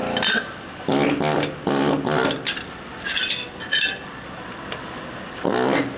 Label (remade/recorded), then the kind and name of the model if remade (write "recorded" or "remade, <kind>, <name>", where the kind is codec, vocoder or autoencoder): recorded